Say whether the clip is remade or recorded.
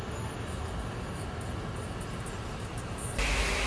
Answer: recorded